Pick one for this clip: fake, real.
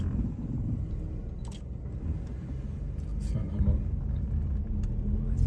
real